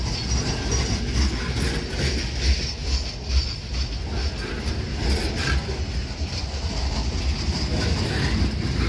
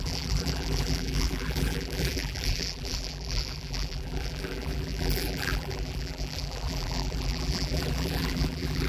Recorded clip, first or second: first